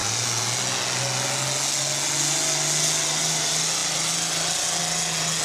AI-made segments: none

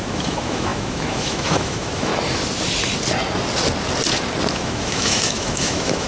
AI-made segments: 0.0-2.1 (autoencoder, DAC-VAE); 4.5-6.1

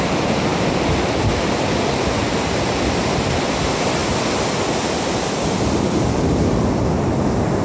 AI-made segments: none

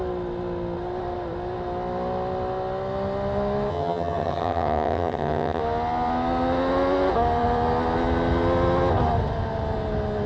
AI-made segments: 3.7-5.6 (vocoder, HiFi-GAN)

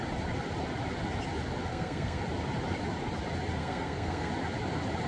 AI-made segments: 1.7-2.2 (codec, SNAC); 3.6-4.3

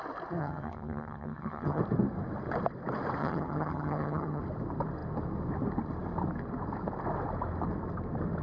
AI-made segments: 0.4-1.8 (vocoder, HiFi-GAN); 3.2-4.4

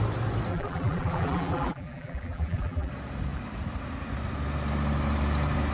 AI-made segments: 0.5-2.9 (vocoder, BigVGAN v2)